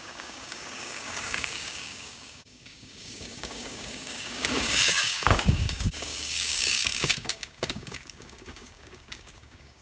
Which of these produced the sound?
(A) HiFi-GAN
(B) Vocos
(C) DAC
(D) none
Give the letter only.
C